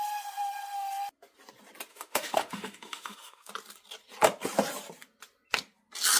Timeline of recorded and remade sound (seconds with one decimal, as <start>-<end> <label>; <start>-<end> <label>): 0.0-1.9 recorded; 1.9-3.5 remade; 3.5-6.2 recorded